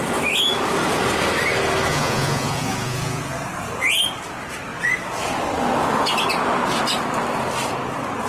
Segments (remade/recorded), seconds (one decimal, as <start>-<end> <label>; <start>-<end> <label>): 0.0-1.9 recorded; 1.9-3.2 remade; 3.2-8.3 recorded